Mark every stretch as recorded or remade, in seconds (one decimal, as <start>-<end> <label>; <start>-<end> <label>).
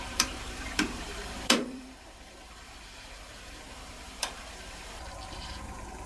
0.0-6.1 remade